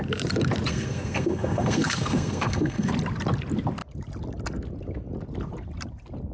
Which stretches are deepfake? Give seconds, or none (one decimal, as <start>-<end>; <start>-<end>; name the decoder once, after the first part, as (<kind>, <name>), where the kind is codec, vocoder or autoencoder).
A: 0.7-2.9 (codec, SNAC)